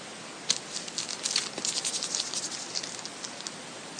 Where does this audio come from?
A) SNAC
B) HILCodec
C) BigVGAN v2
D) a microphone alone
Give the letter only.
D